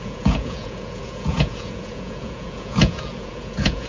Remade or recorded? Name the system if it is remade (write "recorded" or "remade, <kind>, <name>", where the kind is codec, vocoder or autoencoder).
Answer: remade, vocoder, Vocos